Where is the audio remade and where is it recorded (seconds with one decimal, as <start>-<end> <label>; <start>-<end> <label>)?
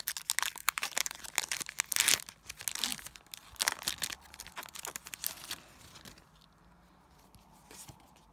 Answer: 0.0-0.6 recorded; 0.6-1.2 remade; 1.2-8.3 recorded